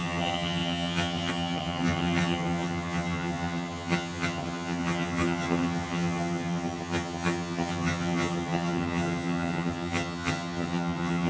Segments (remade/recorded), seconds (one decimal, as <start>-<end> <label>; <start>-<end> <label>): 0.0-11.3 remade